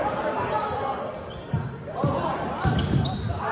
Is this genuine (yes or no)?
yes